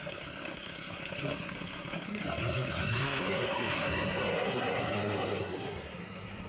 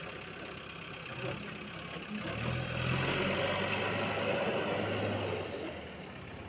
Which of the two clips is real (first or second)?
second